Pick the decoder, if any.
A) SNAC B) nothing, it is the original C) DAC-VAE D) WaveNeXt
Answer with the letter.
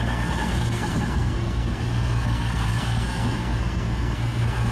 A